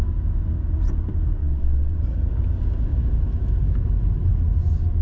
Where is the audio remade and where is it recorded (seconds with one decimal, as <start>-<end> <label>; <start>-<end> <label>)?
0.0-1.4 recorded; 1.4-2.0 remade; 2.0-5.0 recorded